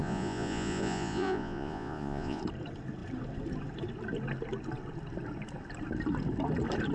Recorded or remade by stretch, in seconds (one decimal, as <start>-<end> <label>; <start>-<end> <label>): 0.0-2.4 remade; 2.4-6.9 recorded